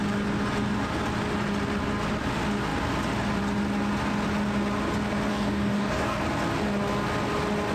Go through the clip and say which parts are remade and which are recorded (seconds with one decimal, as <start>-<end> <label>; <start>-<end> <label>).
0.0-5.3 recorded; 5.3-6.2 remade; 6.2-7.7 recorded